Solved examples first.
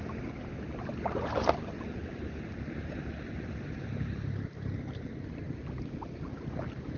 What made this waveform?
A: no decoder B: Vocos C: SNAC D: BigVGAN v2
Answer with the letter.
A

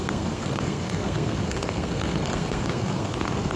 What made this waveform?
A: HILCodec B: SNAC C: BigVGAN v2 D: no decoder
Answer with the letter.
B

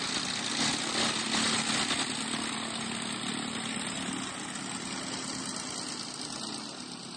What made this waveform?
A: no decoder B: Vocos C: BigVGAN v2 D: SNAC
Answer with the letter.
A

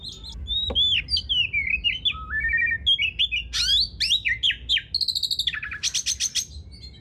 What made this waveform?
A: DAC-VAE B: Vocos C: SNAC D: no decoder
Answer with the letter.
D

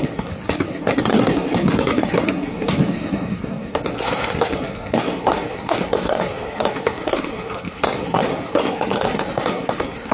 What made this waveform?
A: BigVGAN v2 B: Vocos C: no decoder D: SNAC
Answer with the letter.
D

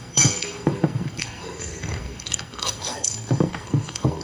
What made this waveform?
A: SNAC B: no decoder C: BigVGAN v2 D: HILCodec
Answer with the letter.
A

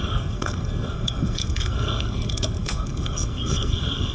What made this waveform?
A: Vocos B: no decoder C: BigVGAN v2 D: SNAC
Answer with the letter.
D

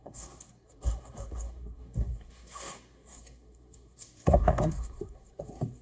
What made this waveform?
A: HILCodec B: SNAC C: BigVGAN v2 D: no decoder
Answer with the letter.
B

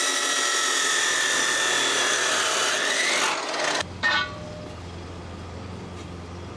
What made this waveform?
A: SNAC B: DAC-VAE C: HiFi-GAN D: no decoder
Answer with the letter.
D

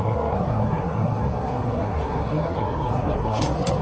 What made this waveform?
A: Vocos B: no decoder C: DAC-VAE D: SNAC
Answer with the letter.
D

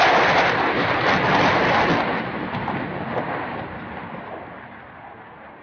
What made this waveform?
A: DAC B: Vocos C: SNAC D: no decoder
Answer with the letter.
D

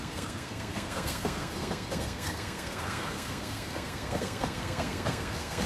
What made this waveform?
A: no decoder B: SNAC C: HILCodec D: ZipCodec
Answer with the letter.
B